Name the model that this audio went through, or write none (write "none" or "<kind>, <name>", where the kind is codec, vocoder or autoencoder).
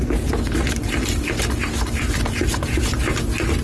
none